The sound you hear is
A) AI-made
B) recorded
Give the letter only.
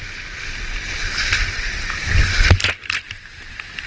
B